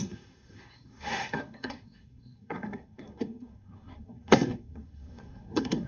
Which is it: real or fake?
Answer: fake